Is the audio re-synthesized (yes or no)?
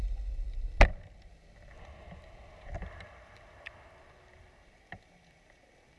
no